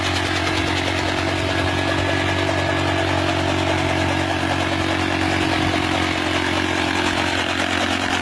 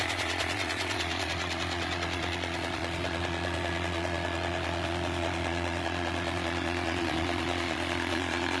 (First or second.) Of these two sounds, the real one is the first